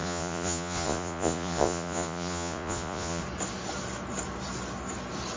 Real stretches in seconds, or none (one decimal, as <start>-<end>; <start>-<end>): 3.2-5.4